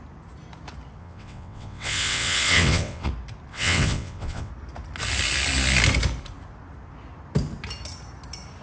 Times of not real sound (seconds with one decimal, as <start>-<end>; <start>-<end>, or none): 1.0-3.1; 3.5-4.5